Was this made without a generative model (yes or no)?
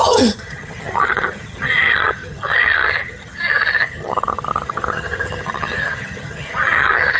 no